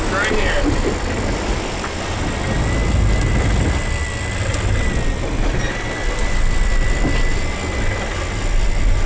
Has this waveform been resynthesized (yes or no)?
no